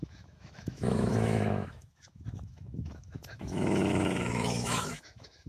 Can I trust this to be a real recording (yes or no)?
no